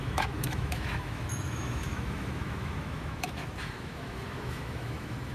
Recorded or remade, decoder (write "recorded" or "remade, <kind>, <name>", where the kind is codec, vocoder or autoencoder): remade, autoencoder, DAC-VAE